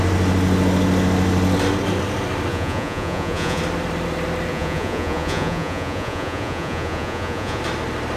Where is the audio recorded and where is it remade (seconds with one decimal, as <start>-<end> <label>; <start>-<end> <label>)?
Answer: 0.0-2.5 recorded; 2.5-3.6 remade; 3.6-4.5 recorded; 4.5-7.6 remade; 7.6-8.2 recorded